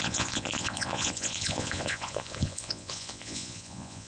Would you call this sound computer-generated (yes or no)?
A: yes